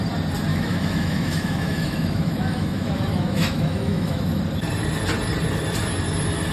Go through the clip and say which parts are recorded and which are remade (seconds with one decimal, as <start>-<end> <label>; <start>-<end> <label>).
0.0-0.5 recorded; 0.5-4.4 remade; 4.4-6.5 recorded

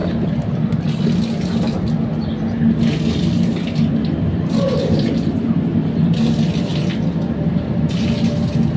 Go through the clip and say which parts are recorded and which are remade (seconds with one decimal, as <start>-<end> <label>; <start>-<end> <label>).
0.0-8.8 recorded

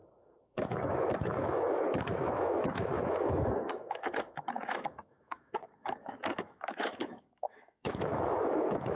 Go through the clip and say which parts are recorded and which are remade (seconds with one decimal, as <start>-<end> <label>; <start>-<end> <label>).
0.0-9.0 remade

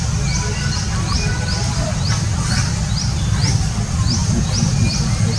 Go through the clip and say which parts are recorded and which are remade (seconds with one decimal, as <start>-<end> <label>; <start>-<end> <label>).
0.0-5.4 recorded

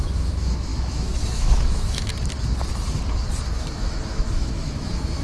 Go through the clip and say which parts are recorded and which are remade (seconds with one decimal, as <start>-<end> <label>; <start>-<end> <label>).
0.0-2.1 remade; 2.1-3.5 recorded; 3.5-5.2 remade

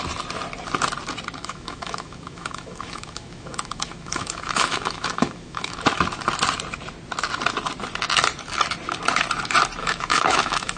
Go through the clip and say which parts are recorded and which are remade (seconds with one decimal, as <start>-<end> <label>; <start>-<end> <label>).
0.0-1.4 recorded; 1.4-5.8 remade; 5.8-9.8 recorded; 9.8-10.8 remade

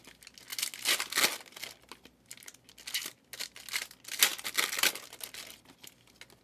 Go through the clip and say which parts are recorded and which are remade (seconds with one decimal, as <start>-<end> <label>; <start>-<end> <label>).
0.0-6.4 recorded

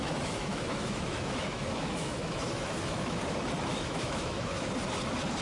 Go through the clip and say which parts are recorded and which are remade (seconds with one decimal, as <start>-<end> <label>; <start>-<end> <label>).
0.0-3.2 remade; 3.2-3.7 recorded; 3.7-4.7 remade; 4.7-5.4 recorded